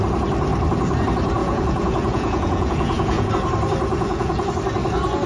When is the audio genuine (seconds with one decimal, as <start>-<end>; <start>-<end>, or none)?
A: 0.0-1.4; 3.3-3.9; 4.5-5.3